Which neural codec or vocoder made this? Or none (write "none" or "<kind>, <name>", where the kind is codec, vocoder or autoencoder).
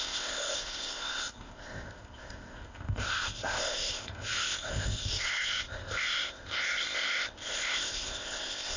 codec, ZipCodec